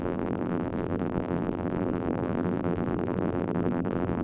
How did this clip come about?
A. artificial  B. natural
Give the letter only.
A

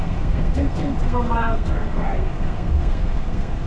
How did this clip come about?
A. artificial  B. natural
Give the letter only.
A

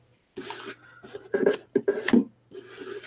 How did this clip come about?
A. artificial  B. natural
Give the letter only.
B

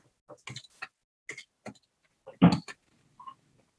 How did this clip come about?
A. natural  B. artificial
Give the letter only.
A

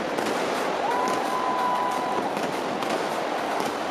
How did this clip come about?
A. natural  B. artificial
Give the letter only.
A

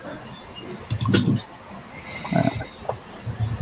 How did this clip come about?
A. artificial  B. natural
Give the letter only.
B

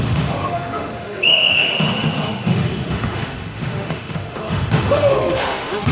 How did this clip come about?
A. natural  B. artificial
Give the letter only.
B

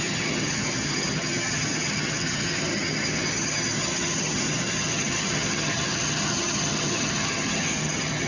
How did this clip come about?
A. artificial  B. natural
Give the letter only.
A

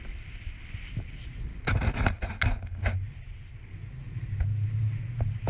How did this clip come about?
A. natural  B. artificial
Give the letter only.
A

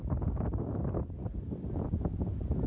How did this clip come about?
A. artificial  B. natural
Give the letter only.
A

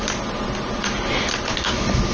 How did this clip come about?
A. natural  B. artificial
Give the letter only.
A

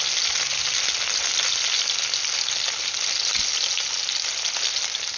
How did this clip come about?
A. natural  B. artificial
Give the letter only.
A